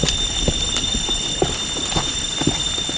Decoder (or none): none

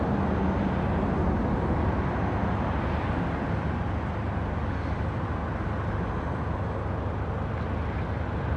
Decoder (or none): none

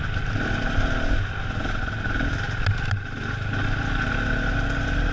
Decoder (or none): none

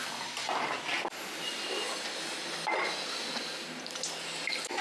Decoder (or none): none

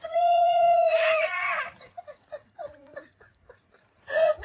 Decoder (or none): vocoder, Vocos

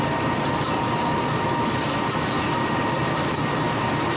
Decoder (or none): vocoder, BigVGAN v2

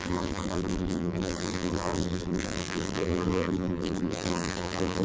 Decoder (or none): vocoder, BigVGAN v2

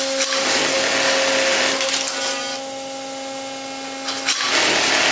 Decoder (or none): none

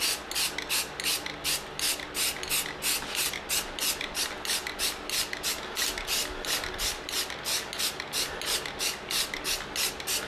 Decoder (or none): none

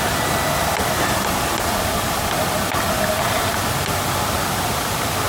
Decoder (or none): none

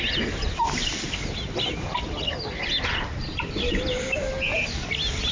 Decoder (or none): none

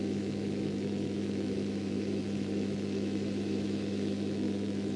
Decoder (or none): autoencoder, DAC-VAE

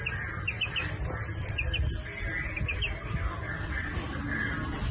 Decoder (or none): none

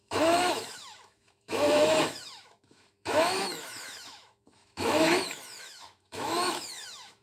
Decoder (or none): autoencoder, DAC-VAE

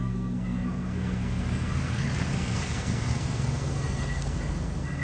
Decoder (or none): codec, SNAC